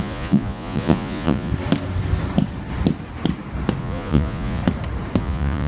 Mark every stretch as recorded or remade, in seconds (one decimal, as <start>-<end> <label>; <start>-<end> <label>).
0.0-1.5 remade; 1.5-3.8 recorded; 3.8-4.6 remade; 4.6-5.2 recorded; 5.2-5.7 remade